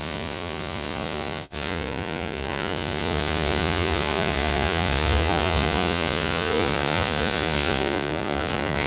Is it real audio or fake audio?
fake